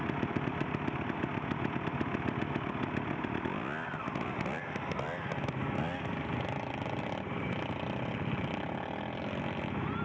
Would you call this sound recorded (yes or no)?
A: yes